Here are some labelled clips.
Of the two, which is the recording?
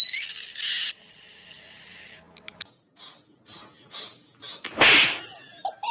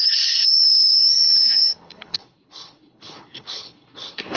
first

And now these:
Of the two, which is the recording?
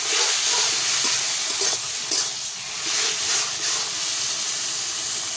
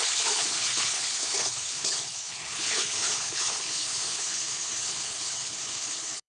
first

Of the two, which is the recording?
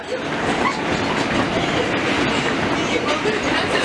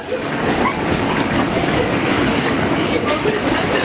first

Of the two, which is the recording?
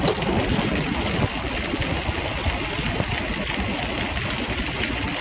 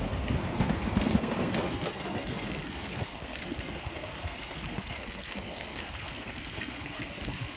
first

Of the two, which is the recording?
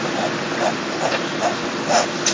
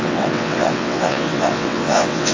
first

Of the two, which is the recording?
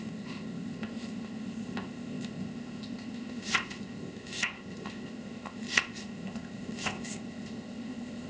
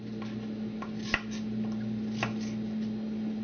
second